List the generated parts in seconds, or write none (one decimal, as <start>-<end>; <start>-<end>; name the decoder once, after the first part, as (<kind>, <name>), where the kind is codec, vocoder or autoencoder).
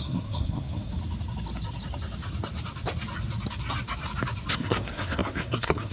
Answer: 0.0-1.0 (codec, SNAC); 4.5-5.9